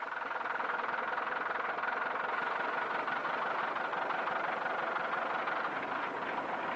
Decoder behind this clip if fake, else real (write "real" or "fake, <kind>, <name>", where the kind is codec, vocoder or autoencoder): real